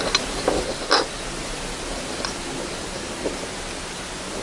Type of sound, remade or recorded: recorded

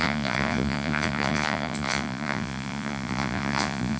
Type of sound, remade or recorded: remade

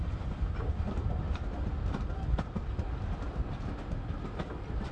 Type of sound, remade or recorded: recorded